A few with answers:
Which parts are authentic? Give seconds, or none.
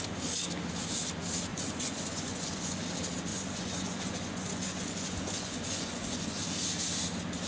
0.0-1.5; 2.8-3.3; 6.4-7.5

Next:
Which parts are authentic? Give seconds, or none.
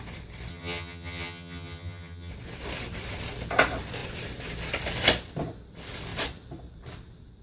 0.0-0.5; 2.3-7.4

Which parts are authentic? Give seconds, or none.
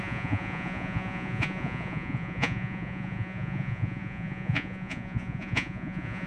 none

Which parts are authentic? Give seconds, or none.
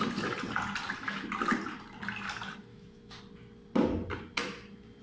0.0-2.7; 3.2-5.0